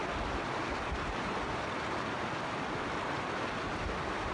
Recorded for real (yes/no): yes